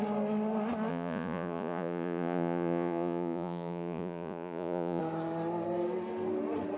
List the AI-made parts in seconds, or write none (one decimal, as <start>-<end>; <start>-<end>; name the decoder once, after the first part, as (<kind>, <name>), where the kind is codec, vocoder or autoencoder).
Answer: 0.9-5.0 (vocoder, Vocos)